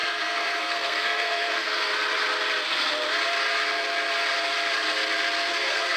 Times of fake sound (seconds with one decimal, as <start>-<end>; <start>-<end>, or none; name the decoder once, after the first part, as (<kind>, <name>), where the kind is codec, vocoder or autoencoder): 0.0-1.9 (codec, SNAC); 5.5-6.0